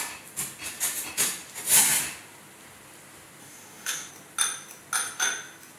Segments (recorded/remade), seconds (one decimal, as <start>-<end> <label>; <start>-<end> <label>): 0.0-3.4 recorded; 3.4-4.1 remade; 4.1-5.8 recorded

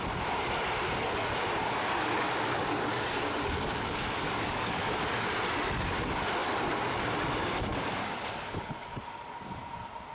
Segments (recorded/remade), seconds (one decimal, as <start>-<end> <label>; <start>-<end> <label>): 0.0-1.6 recorded; 1.6-4.9 remade; 4.9-7.7 recorded; 7.7-9.4 remade; 9.4-10.1 recorded

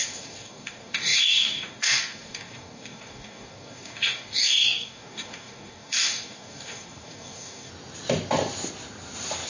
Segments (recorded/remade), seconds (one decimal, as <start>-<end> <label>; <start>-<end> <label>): 0.0-7.7 remade; 7.7-9.5 recorded

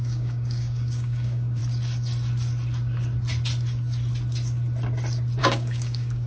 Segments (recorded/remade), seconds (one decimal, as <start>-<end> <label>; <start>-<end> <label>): 0.0-1.6 remade; 1.6-5.4 recorded; 5.4-6.3 remade

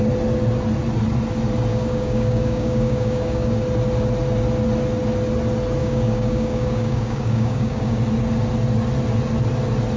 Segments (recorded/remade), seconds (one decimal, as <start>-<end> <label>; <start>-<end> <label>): 0.0-1.7 recorded; 1.7-3.6 remade; 3.6-5.8 recorded; 5.8-8.0 remade; 8.0-10.0 recorded